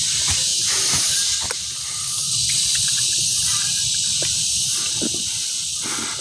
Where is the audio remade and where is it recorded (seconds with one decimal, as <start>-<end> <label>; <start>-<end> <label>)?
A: 0.0-2.4 recorded; 2.4-3.2 remade; 3.2-6.2 recorded

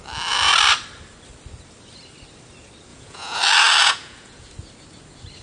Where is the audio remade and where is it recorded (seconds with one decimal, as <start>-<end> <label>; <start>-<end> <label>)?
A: 0.0-2.9 recorded; 2.9-3.4 remade; 3.4-3.8 recorded; 3.8-4.5 remade; 4.5-5.4 recorded

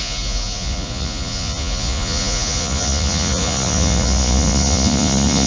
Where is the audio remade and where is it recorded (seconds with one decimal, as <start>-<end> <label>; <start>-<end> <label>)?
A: 0.0-5.5 remade

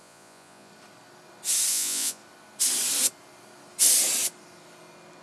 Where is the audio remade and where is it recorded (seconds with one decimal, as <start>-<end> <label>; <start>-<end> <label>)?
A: 0.0-0.7 remade; 0.7-1.7 recorded; 1.7-2.2 remade; 2.2-5.2 recorded